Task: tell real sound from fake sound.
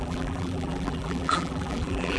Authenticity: fake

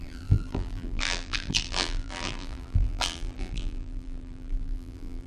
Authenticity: fake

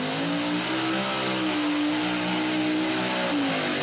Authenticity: real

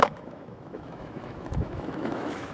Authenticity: fake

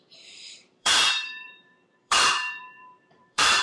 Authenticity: fake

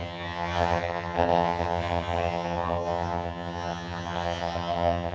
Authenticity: fake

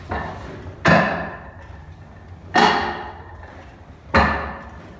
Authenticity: real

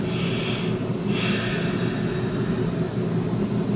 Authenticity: real